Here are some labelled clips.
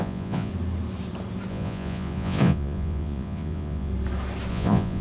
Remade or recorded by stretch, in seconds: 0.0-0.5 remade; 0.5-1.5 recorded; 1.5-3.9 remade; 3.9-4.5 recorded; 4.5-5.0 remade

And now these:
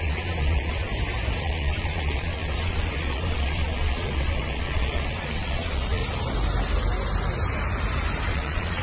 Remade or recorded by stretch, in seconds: 0.0-0.9 remade; 0.9-1.4 recorded; 1.4-6.0 remade; 6.0-8.3 recorded; 8.3-8.8 remade

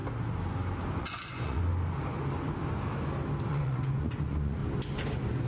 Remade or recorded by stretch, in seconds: 0.0-1.0 recorded; 1.0-1.7 remade; 1.7-3.5 recorded; 3.5-4.6 remade; 4.6-5.5 recorded

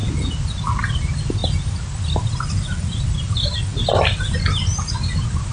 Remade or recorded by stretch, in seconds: 0.0-5.5 recorded

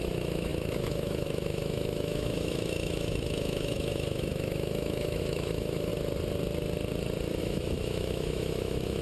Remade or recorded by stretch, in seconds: 0.0-5.9 remade; 5.9-7.4 recorded; 7.4-9.0 remade

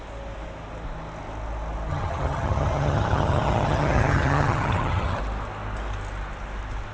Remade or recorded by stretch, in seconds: 0.0-1.9 recorded; 1.9-5.2 remade; 5.2-6.9 recorded

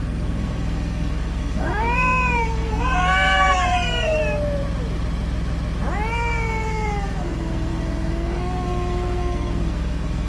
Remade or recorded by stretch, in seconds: 0.0-4.2 remade; 4.2-6.1 recorded; 6.1-10.3 remade

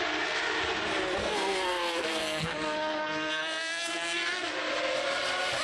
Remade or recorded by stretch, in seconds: 0.0-1.2 recorded; 1.2-4.5 remade; 4.5-5.6 recorded